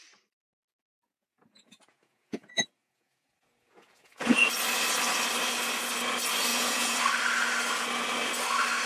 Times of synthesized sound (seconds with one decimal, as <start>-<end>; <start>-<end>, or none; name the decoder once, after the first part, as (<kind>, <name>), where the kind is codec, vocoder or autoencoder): 0.9-4.5 (vocoder, Vocos); 6.5-7.0